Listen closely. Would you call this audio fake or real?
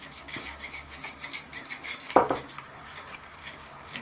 fake